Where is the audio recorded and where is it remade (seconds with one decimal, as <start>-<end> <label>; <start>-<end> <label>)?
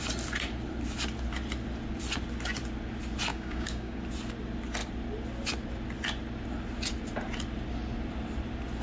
0.0-3.3 recorded; 3.3-4.0 remade; 4.0-8.8 recorded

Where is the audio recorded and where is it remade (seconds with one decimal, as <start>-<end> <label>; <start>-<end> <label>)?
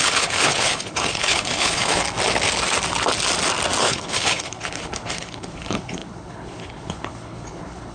0.0-2.0 remade; 2.0-3.8 recorded; 3.8-7.9 remade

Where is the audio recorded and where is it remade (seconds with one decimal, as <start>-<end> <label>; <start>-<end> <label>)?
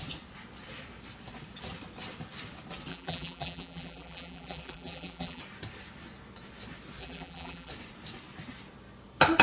0.0-2.9 recorded; 2.9-5.4 remade; 5.4-7.0 recorded; 7.0-7.7 remade; 7.7-9.4 recorded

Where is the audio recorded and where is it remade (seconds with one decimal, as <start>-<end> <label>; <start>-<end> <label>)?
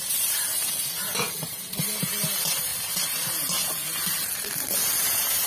0.0-2.7 remade; 2.7-4.6 recorded; 4.6-5.5 remade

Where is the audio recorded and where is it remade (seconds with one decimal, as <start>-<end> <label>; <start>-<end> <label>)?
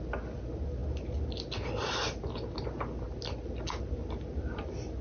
0.0-5.0 recorded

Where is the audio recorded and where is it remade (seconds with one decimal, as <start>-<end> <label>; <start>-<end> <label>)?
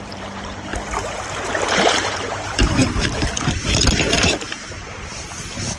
0.0-0.7 remade; 0.7-1.7 recorded; 1.7-5.8 remade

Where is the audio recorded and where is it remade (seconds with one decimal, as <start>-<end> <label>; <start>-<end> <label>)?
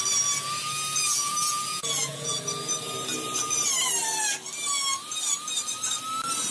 0.0-1.0 recorded; 1.0-2.4 remade; 2.4-6.5 recorded